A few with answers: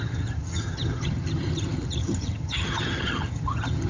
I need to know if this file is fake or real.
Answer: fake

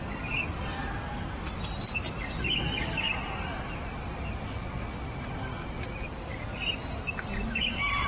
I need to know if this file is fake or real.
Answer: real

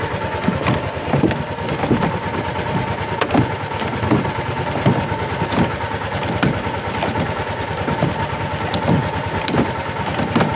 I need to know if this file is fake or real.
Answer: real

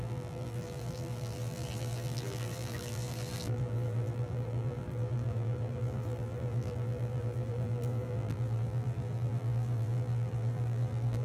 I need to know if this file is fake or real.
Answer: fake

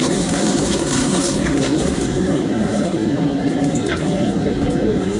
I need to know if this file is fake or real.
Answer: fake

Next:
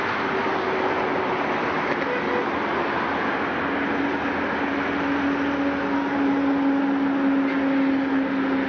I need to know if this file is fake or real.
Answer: real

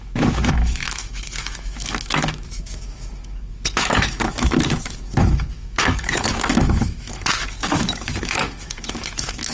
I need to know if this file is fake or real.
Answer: fake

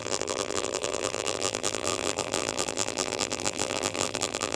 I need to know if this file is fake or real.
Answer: fake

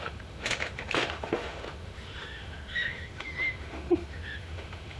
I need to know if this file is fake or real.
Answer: fake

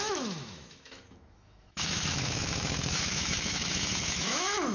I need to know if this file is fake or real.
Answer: fake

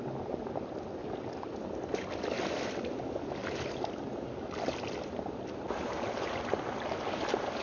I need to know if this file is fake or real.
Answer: real